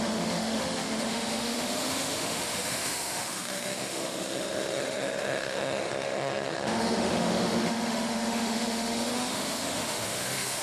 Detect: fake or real fake